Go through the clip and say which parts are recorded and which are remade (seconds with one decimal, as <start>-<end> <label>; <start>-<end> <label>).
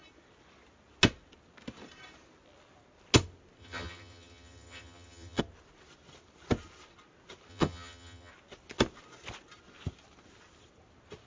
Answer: 0.0-3.6 recorded; 3.6-5.4 remade; 5.4-7.5 recorded; 7.5-8.3 remade; 8.3-11.3 recorded